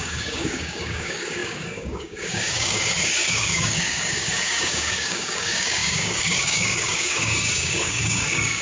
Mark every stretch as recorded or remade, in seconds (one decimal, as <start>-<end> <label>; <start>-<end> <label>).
0.0-8.6 remade